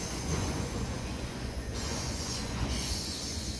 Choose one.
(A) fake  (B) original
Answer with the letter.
A